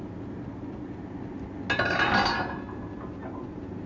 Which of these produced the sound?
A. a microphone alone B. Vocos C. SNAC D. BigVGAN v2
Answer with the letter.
A